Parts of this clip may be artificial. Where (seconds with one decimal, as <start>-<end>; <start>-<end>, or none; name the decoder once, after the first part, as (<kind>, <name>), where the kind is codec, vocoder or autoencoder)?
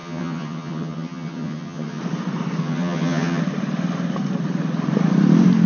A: 0.0-2.0 (vocoder, HiFi-GAN); 2.6-3.4